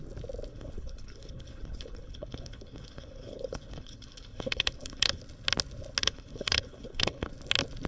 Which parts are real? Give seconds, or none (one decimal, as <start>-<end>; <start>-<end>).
0.0-0.5; 5.2-6.0; 7.3-7.9